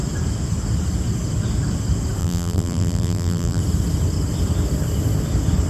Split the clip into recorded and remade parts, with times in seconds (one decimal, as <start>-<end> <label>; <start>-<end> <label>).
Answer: 0.0-2.2 recorded; 2.2-3.6 remade; 3.6-5.7 recorded